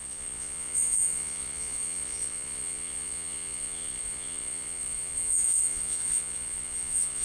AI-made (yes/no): yes